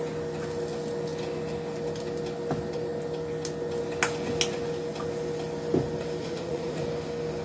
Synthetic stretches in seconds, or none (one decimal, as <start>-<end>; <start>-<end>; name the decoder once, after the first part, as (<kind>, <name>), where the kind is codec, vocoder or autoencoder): 6.2-6.8 (vocoder, Vocos)